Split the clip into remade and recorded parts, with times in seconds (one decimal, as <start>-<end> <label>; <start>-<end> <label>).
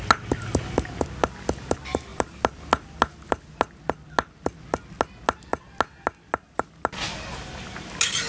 0.0-8.3 recorded